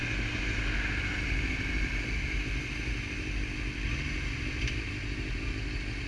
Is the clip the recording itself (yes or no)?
yes